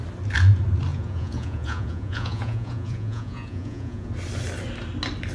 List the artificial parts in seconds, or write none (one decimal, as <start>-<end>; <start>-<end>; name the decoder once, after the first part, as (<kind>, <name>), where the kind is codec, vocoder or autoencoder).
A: 0.9-4.1 (vocoder, Vocos)